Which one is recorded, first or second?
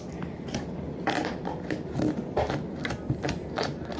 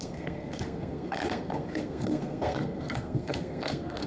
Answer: first